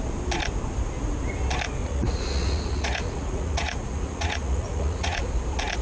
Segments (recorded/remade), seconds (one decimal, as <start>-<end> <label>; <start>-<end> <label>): 0.0-1.8 recorded; 1.8-5.3 remade; 5.3-5.8 recorded